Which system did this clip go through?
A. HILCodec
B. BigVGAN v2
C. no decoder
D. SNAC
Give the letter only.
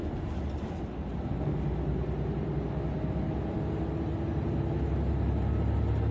C